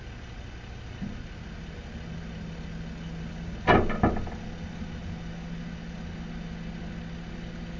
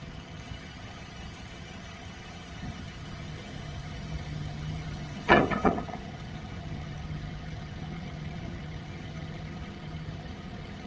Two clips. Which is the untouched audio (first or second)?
first